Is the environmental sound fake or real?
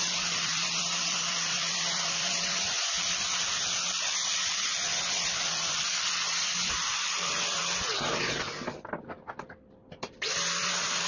fake